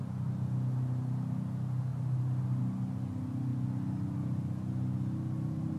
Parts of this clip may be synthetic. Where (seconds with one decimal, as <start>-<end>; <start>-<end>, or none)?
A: none